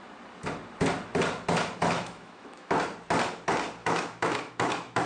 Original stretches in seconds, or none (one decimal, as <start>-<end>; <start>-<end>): 0.0-1.8; 2.7-3.8